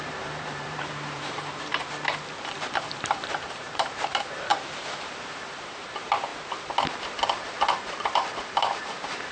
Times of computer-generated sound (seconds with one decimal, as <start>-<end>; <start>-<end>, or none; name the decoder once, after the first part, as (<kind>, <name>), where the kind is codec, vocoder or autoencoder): 0.0-1.7 (vocoder, BigVGAN v2); 2.4-6.3; 7.6-9.3